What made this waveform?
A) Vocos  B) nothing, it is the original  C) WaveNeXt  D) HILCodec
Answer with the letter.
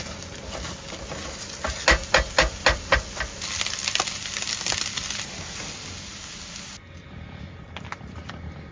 B